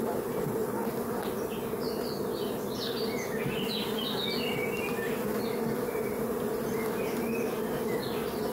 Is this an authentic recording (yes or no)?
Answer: yes